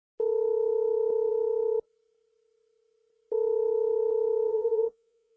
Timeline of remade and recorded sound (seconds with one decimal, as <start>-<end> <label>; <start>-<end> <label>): 0.0-4.5 recorded; 4.5-5.4 remade